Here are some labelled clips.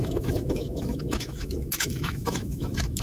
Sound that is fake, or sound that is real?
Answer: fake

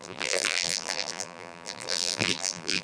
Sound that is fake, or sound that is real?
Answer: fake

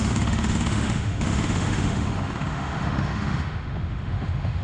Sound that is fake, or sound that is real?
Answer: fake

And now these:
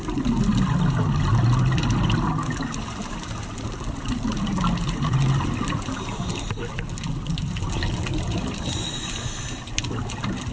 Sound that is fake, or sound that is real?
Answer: real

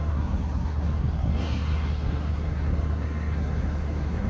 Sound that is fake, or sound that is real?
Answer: fake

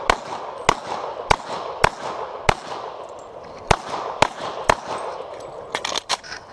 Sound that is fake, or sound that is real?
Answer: real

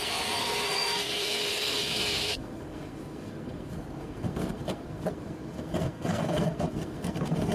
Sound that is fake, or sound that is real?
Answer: fake